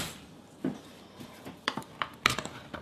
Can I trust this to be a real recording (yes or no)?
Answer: no